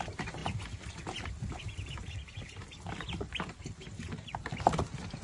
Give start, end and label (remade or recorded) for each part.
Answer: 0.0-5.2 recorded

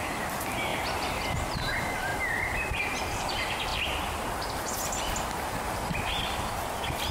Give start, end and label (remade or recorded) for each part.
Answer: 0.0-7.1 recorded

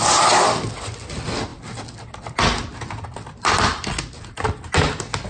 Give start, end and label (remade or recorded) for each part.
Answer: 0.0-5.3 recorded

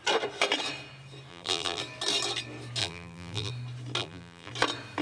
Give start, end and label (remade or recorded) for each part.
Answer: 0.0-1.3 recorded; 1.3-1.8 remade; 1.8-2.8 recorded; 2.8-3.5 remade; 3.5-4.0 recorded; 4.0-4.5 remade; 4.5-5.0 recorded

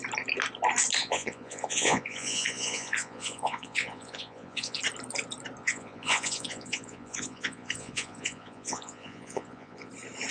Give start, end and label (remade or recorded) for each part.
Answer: 0.0-1.0 recorded; 1.0-4.8 remade; 4.8-5.6 recorded; 5.6-9.9 remade; 9.9-10.3 recorded